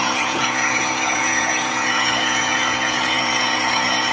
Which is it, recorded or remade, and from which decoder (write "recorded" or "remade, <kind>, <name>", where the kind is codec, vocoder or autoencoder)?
remade, vocoder, Vocos